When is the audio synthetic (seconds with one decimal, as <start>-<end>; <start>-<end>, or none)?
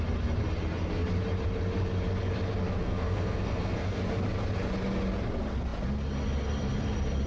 2.8-4.0